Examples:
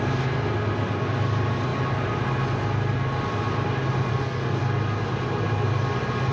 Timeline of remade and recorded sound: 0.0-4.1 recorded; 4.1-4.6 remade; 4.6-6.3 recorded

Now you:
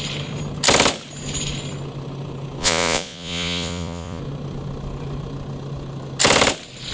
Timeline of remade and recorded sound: 0.0-2.6 recorded; 2.6-4.2 remade; 4.2-6.9 recorded

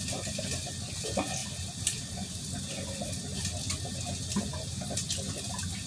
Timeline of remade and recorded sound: 0.0-5.9 recorded